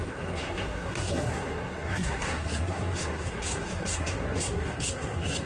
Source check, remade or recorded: remade